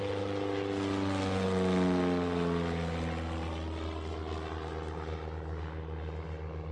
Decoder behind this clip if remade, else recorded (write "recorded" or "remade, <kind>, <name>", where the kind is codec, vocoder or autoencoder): recorded